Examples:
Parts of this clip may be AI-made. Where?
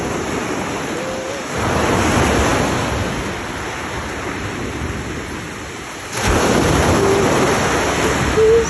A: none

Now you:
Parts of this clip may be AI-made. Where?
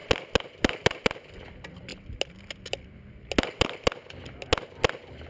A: none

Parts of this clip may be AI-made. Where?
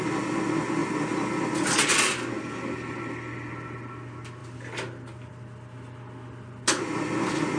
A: none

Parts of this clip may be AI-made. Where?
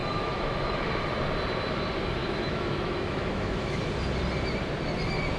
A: 0.0-0.9 (autoencoder, DAC-VAE); 2.2-3.8